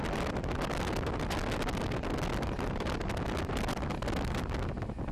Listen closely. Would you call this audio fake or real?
real